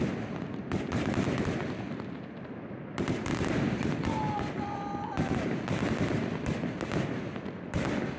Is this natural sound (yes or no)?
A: yes